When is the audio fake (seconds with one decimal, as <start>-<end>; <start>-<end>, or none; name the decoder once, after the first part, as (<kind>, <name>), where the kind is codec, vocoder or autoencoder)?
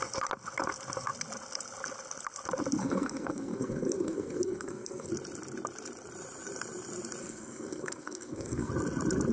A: 2.8-5.1 (codec, SNAC); 7.2-8.7